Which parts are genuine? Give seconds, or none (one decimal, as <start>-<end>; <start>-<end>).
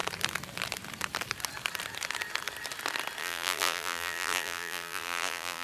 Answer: 0.0-3.2